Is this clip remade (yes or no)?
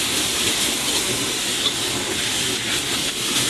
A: no